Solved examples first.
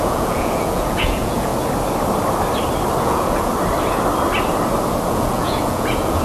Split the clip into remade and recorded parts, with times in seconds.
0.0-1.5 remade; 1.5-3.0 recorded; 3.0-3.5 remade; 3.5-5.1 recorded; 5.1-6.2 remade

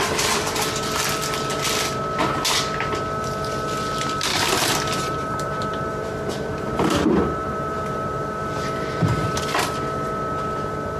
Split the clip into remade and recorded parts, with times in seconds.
0.0-4.3 recorded; 4.3-9.4 remade; 9.4-11.0 recorded

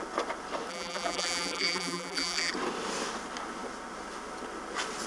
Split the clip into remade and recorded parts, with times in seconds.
0.0-0.7 recorded; 0.7-2.5 remade; 2.5-5.1 recorded

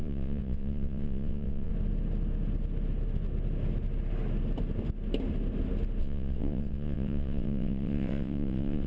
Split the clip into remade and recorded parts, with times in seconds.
0.0-1.7 remade; 1.7-6.0 recorded; 6.0-8.9 remade

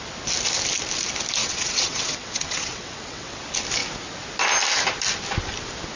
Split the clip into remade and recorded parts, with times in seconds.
0.0-1.4 recorded; 1.4-3.4 remade; 3.4-6.0 recorded

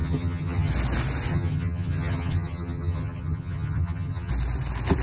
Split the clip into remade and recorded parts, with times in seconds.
0.0-0.7 remade; 0.7-1.3 recorded; 1.3-4.3 remade; 4.3-5.0 recorded

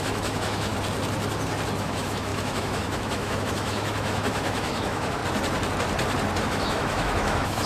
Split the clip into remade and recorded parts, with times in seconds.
0.0-0.7 remade; 0.7-1.8 recorded; 1.8-5.2 remade; 5.2-6.4 recorded; 6.4-7.7 remade